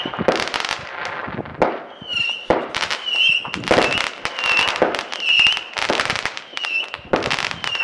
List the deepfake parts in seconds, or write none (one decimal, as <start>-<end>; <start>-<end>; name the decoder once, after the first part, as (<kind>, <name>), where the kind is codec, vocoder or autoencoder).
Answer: 6.5-7.1 (autoencoder, DAC-VAE)

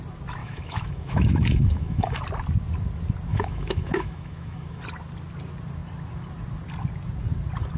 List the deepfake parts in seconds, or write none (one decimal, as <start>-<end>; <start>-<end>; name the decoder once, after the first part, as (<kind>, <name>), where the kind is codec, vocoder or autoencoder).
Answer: 0.4-2.2 (autoencoder, DAC-VAE); 3.3-4.8

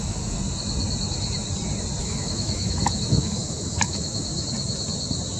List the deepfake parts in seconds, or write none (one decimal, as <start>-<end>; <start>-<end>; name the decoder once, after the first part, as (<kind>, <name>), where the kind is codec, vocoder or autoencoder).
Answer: 0.0-0.4 (autoencoder, DAC-VAE); 2.0-4.3

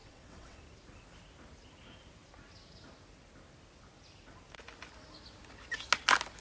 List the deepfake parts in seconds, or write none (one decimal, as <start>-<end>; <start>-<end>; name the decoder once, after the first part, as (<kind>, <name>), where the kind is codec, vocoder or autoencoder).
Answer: 0.0-0.6 (vocoder, WaveNeXt)

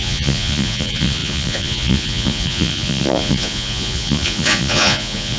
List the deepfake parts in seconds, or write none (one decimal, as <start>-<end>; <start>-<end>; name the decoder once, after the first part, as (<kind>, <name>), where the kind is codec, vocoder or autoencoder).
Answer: 0.0-5.4 (vocoder, Vocos)